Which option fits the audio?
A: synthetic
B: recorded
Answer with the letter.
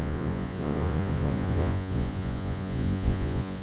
A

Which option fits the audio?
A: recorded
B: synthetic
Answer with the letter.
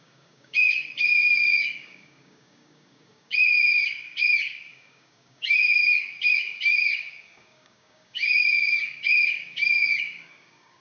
B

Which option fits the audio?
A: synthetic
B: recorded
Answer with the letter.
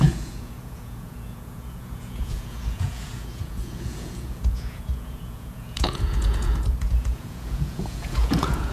A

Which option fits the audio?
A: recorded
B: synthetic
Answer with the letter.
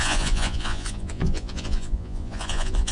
B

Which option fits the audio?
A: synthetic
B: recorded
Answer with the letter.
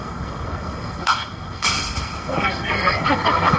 A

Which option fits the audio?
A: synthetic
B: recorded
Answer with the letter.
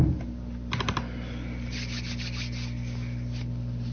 B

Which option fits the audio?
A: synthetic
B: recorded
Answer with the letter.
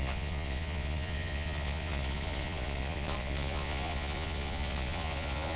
A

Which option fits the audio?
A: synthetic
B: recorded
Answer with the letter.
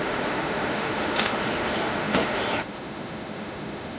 A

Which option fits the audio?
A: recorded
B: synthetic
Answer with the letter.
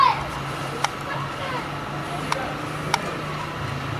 A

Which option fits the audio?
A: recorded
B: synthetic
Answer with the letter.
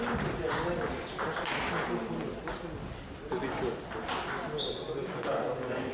A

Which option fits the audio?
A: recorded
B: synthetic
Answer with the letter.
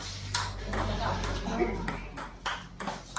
A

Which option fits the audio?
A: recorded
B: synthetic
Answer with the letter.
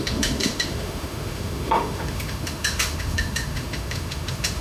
B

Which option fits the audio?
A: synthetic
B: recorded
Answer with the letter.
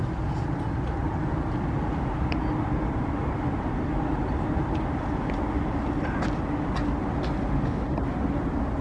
B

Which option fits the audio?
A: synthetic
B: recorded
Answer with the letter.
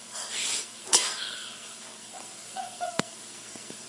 A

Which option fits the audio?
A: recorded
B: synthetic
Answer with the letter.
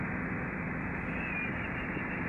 A